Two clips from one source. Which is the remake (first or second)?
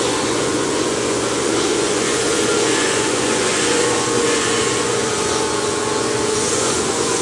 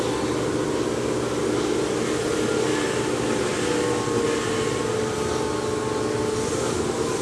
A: first